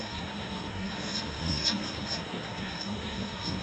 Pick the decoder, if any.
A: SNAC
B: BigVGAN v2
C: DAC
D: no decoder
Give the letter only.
A